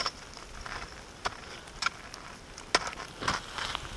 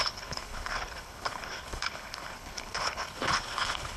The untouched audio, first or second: first